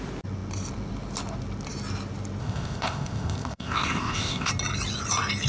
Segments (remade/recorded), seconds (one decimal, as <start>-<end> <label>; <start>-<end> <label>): 0.0-2.4 recorded; 2.4-4.5 remade; 4.5-5.5 recorded